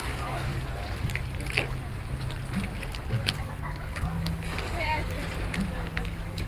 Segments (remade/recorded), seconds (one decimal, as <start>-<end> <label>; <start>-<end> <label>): 0.0-0.5 remade; 0.5-3.1 recorded; 3.1-5.0 remade; 5.0-5.7 recorded; 5.7-6.5 remade